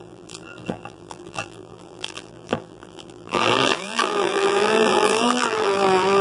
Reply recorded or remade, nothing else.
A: remade